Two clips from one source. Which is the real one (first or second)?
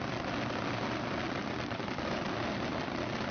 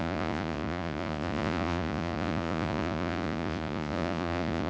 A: first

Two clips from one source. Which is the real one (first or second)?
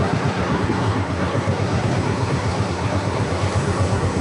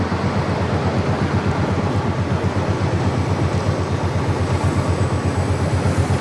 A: second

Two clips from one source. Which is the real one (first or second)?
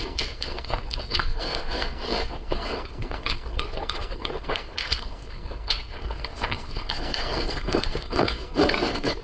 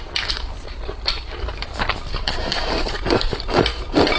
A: second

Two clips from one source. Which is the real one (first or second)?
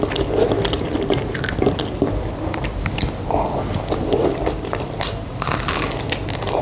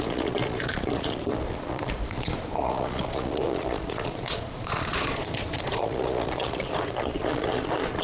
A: first